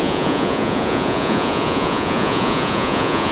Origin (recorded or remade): remade